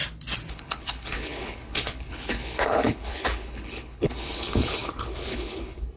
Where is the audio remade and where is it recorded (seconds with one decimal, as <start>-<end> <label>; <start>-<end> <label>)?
0.0-0.5 recorded; 0.5-6.0 remade